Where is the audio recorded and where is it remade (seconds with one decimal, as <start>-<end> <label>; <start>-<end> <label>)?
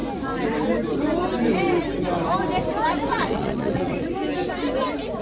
0.0-3.1 recorded; 3.1-4.2 remade; 4.2-5.2 recorded